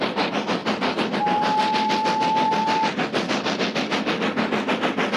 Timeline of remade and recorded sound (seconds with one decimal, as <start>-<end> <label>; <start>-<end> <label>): 0.0-5.2 recorded